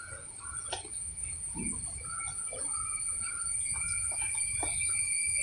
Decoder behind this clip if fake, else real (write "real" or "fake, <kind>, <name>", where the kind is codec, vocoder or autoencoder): fake, vocoder, Vocos